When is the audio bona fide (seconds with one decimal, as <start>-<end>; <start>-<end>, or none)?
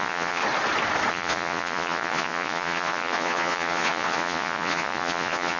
0.4-1.1